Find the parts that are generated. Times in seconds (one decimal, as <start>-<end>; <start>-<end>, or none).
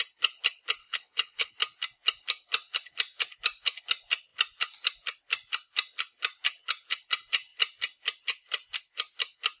0.8-1.5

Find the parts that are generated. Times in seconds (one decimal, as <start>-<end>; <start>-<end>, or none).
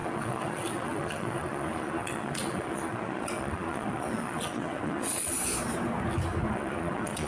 0.0-5.3; 6.5-7.3